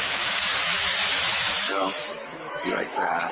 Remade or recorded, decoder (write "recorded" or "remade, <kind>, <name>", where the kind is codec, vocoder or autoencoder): remade, autoencoder, DAC-VAE